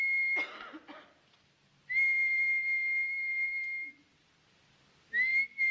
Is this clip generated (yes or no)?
no